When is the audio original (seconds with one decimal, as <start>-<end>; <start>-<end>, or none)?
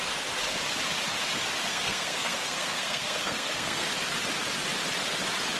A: 0.0-1.7; 3.9-5.6